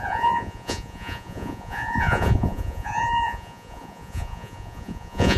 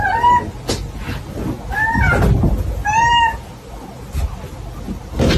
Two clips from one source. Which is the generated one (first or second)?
first